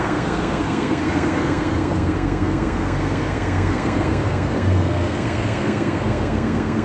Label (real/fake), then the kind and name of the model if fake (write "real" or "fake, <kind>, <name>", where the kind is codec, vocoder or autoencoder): fake, codec, SNAC